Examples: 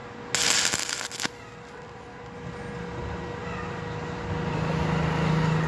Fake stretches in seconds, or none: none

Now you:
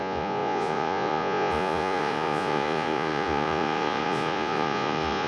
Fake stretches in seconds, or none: 0.0-5.3 (vocoder, Vocos)

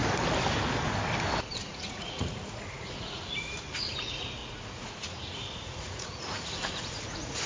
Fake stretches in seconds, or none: 1.6-7.5 (vocoder, Vocos)

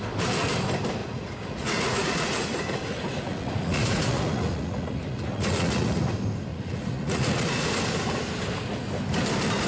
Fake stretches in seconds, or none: 1.0-6.1 (vocoder, Vocos); 6.5-7.7

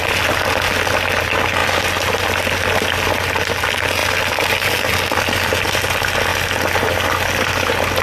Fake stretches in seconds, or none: none

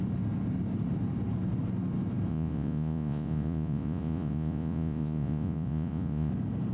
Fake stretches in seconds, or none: 2.3-6.3 (vocoder, Vocos)

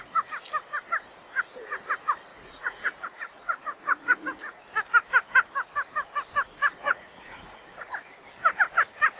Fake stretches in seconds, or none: 2.3-4.6 (vocoder, Vocos); 6.7-7.9

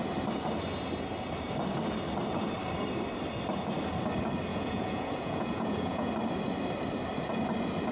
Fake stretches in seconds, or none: 4.5-6.1 (vocoder, Vocos)